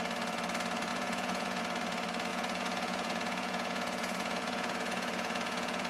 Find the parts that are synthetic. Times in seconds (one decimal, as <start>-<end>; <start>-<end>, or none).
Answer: 0.9-1.6; 2.3-5.9